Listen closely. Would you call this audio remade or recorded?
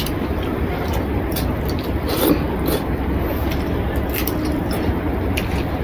recorded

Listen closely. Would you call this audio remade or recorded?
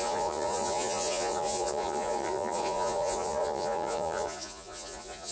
remade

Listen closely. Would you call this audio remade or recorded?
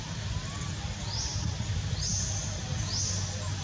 recorded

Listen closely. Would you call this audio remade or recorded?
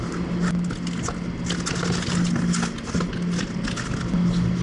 recorded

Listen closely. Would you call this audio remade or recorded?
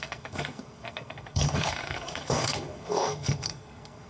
remade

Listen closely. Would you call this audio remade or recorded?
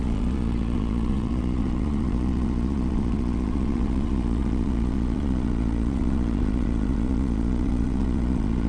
remade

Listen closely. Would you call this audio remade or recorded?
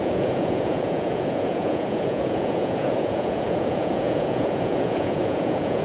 remade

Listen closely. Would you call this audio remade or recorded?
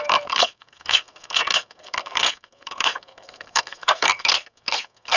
remade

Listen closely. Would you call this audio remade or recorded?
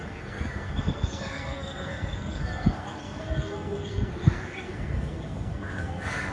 remade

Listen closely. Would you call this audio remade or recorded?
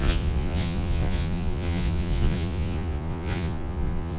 remade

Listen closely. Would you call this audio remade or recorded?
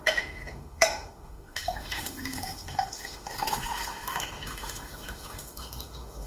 remade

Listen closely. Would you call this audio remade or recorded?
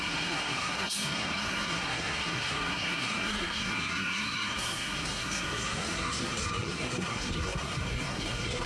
remade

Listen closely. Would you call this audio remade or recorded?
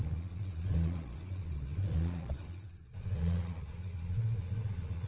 remade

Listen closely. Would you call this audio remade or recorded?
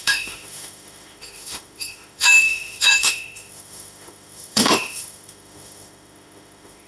remade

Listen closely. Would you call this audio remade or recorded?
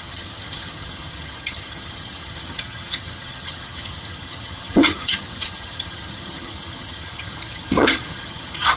remade